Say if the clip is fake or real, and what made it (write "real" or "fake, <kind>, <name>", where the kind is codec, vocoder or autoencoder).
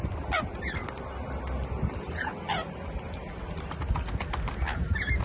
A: real